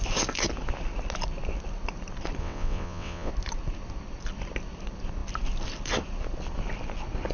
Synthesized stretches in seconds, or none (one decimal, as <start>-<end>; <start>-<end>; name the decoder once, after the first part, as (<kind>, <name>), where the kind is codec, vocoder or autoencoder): 2.4-3.3 (vocoder, WaveNeXt)